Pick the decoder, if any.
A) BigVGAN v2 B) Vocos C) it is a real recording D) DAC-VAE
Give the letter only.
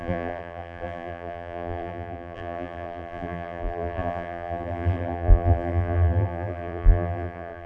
A